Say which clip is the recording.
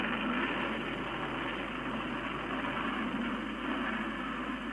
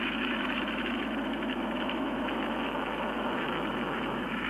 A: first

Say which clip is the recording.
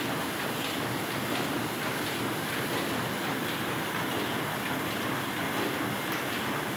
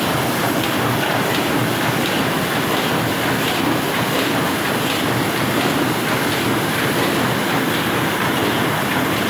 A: first